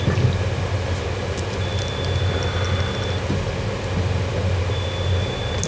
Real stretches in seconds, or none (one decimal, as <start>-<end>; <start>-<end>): 0.0-5.7